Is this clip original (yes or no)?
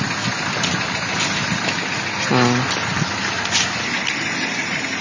yes